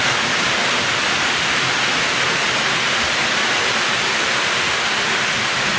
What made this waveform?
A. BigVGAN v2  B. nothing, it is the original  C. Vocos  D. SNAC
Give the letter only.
B